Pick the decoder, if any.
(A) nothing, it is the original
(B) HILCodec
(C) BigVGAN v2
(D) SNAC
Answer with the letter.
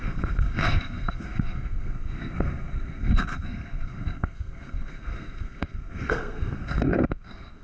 D